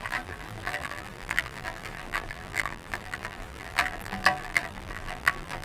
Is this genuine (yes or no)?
no